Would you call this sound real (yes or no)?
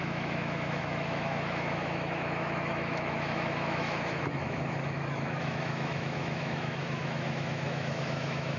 no